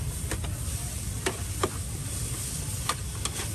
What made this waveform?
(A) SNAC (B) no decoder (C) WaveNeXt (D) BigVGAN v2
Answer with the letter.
B